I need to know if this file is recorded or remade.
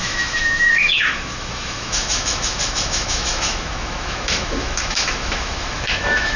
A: remade